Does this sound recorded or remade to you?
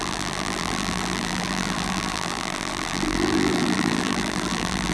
remade